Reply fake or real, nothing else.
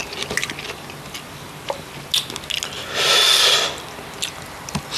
real